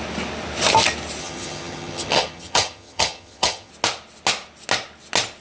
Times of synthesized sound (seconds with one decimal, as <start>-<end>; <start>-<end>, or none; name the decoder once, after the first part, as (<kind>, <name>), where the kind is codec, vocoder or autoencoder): 1.2-3.7 (vocoder, HiFi-GAN)